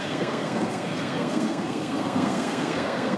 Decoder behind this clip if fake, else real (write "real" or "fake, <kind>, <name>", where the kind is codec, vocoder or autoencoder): fake, codec, SNAC